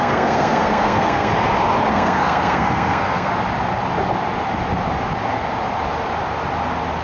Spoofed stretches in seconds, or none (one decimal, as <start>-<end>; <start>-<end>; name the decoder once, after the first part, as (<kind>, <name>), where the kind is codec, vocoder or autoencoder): 0.0-1.3 (codec, SNAC); 1.9-3.3